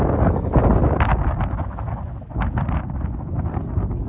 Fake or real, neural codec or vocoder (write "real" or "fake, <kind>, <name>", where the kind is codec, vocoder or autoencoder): real